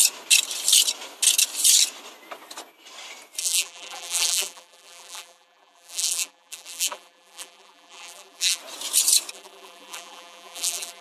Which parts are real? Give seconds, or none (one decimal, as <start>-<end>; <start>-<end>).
0.0-3.4; 8.6-9.3